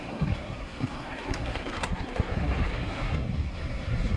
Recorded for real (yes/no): no